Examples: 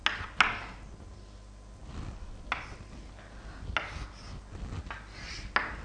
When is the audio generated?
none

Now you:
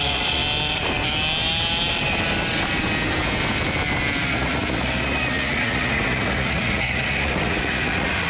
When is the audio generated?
0.0-0.4 (vocoder, Vocos); 4.2-8.3

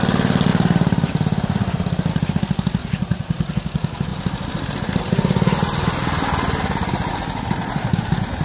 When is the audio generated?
2.8-3.5 (vocoder, Vocos)

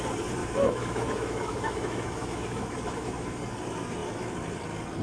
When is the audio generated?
0.4-3.4 (autoencoder, DAC-VAE)

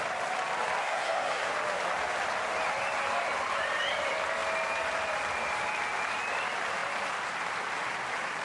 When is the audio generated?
0.8-1.5 (codec, SNAC)

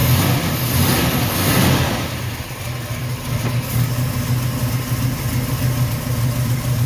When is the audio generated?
none